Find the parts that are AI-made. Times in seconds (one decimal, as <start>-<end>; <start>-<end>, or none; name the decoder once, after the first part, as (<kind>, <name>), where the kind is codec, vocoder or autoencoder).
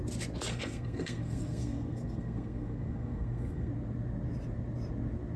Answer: 0.5-3.7 (codec, SNAC)